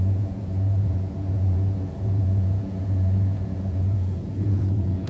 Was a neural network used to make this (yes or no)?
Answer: yes